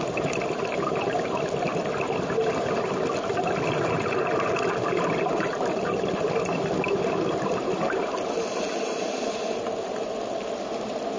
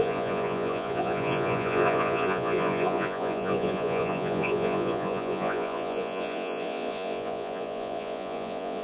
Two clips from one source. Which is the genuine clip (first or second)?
first